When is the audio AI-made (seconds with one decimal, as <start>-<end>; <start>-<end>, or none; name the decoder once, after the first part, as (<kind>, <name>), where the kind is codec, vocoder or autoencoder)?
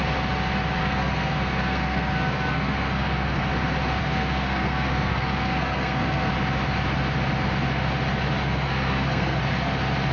0.8-3.4 (codec, SNAC); 4.0-6.3; 8.4-9.4